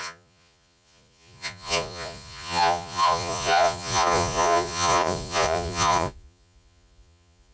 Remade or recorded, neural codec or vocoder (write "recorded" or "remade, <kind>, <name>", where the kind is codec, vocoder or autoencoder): remade, vocoder, Vocos